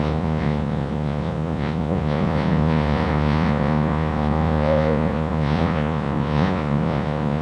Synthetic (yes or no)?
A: yes